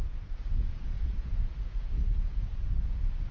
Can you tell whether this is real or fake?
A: fake